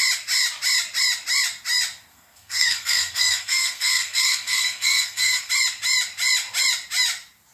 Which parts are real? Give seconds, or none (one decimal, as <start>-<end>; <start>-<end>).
0.0-2.1; 5.5-7.5